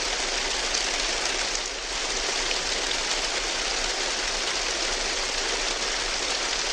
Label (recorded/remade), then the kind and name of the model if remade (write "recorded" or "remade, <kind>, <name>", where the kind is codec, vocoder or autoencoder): recorded